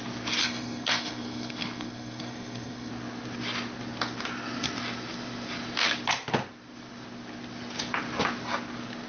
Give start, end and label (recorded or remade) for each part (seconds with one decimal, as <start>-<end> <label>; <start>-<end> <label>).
0.0-0.4 recorded; 0.4-2.9 remade; 2.9-9.1 recorded